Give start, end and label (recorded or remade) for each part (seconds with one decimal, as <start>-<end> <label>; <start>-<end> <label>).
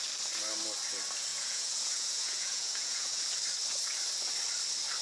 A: 0.0-1.3 recorded; 1.3-3.2 remade; 3.2-5.0 recorded